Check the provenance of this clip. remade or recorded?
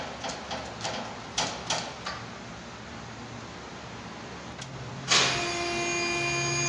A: recorded